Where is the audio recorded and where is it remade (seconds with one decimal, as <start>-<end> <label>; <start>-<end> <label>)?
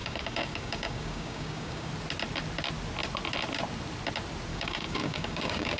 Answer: 0.0-1.9 remade; 1.9-4.5 recorded; 4.5-5.8 remade